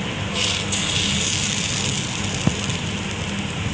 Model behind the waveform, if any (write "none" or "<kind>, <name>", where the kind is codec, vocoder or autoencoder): none